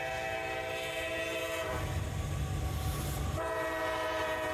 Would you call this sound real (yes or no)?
yes